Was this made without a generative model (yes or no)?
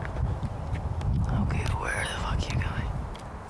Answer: yes